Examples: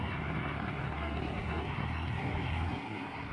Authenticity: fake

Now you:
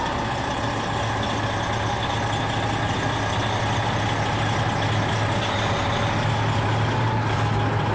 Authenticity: real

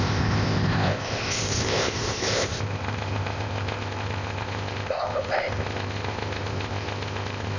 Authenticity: fake